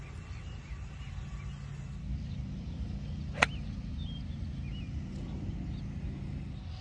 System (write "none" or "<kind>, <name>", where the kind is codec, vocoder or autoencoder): none